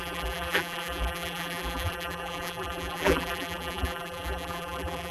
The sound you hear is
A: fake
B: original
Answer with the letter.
A